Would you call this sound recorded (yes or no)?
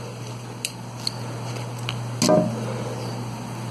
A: yes